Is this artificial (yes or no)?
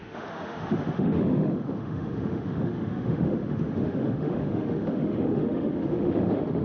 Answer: yes